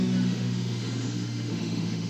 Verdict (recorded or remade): remade